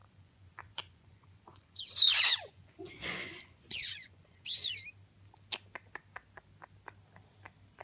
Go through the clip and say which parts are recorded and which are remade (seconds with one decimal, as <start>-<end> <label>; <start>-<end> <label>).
0.0-4.7 remade; 4.7-7.8 recorded